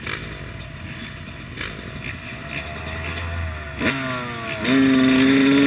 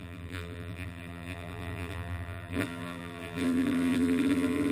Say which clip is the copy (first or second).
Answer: second